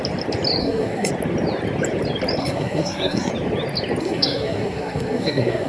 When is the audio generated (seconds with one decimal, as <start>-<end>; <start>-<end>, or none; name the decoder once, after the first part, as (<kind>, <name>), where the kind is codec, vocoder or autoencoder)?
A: 0.6-1.1 (codec, SNAC); 2.4-3.3; 4.0-5.7